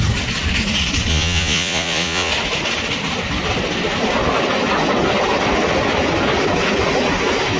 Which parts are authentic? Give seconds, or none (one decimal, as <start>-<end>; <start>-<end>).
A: 0.0-1.1; 2.3-7.6